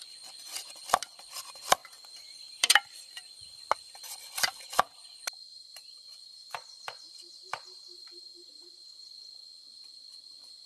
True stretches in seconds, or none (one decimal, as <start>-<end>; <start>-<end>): 0.0-1.8; 3.1-5.5; 9.1-10.7